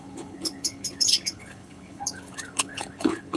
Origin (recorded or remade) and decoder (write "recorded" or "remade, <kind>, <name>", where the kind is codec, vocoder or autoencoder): remade, codec, HILCodec